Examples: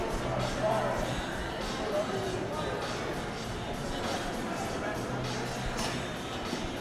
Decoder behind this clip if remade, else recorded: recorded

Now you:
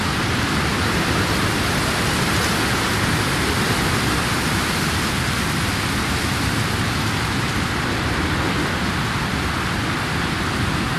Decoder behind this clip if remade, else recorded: recorded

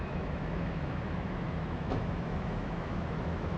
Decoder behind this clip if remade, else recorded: remade, autoencoder, DAC-VAE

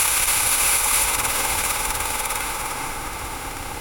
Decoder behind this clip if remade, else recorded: remade, autoencoder, DAC-VAE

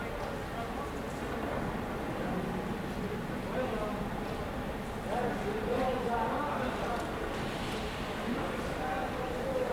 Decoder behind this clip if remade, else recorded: recorded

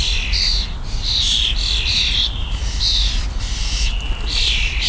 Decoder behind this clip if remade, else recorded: recorded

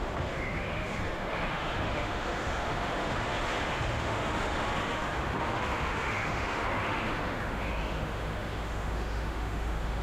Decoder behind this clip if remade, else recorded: remade, autoencoder, DAC-VAE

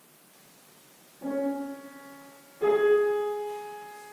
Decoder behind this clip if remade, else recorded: recorded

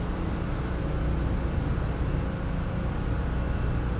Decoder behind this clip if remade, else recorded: recorded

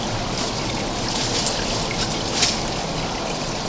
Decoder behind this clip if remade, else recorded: recorded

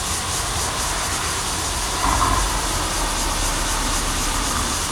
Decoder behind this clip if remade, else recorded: recorded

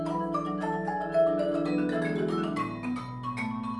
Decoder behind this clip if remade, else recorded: recorded